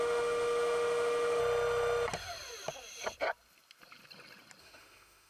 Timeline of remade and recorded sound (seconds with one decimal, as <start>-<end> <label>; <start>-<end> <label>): 0.0-1.4 remade; 1.4-4.6 recorded; 4.6-5.3 remade